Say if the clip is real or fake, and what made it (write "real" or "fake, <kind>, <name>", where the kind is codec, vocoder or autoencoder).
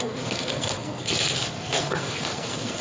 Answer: fake, codec, SNAC